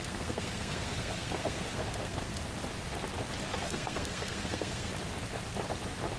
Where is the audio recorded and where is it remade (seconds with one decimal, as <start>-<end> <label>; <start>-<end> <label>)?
0.0-2.3 remade; 2.3-3.6 recorded; 3.6-4.9 remade; 4.9-6.2 recorded